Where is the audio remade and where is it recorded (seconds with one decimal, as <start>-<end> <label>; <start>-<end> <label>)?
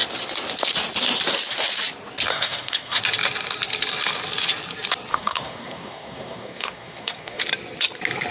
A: 0.0-2.3 recorded; 2.3-3.0 remade; 3.0-5.1 recorded; 5.1-7.4 remade; 7.4-8.3 recorded